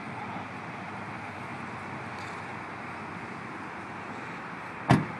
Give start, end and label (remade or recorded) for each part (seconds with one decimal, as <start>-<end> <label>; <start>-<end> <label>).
0.0-5.2 recorded